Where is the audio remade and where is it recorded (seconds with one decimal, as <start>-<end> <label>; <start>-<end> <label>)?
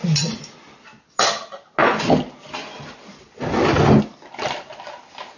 0.0-5.4 recorded